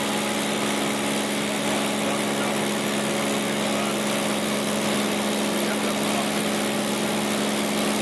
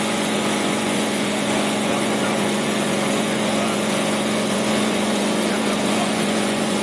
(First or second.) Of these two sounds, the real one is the first